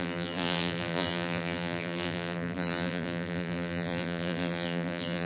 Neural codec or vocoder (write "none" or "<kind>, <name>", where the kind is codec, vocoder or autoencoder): vocoder, BigVGAN v2